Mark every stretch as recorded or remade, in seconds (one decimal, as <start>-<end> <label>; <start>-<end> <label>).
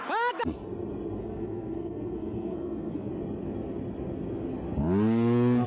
0.0-1.2 recorded; 1.2-3.1 remade; 3.1-5.7 recorded